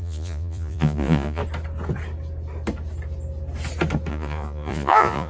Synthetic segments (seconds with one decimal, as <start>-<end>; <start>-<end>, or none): 0.0-1.4; 4.1-5.3